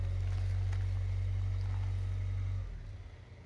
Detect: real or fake real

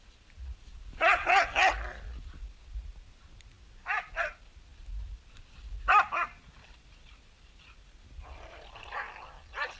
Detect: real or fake real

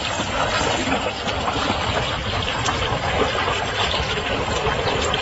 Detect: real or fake fake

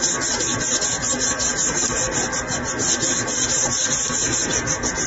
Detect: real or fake real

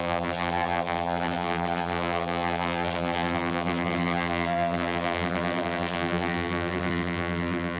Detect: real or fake fake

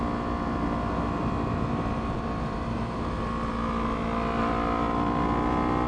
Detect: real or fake real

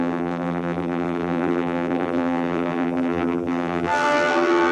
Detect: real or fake fake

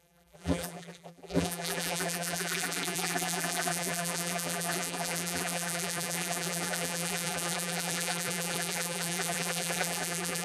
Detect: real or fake fake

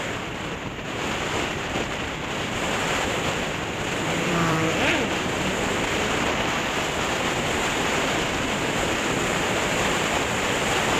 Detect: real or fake fake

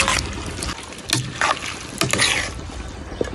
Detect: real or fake real